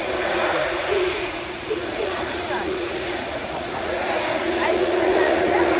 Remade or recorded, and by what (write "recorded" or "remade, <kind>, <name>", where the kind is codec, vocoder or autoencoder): remade, vocoder, Vocos